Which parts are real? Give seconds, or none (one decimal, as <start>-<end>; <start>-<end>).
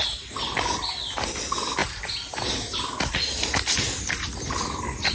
0.0-5.1